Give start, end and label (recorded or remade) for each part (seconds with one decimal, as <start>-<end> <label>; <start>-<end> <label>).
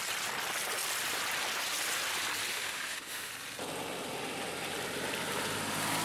0.0-2.5 recorded; 2.5-3.3 remade; 3.3-6.0 recorded